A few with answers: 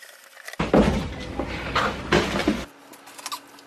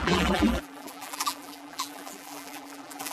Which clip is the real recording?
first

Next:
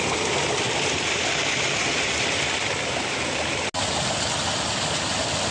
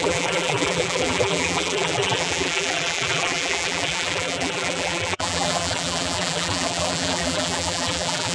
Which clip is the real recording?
first